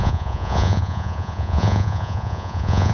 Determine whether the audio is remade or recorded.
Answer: remade